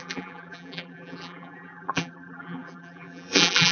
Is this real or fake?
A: fake